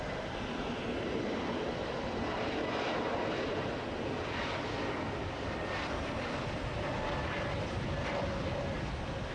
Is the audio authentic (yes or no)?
yes